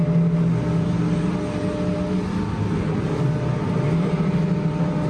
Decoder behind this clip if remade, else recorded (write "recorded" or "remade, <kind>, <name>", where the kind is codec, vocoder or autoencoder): recorded